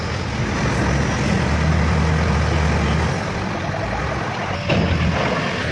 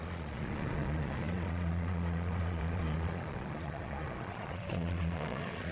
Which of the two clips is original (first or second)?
first